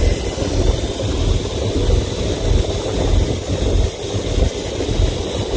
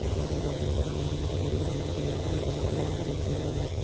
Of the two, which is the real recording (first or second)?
first